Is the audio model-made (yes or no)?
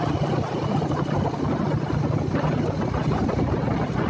no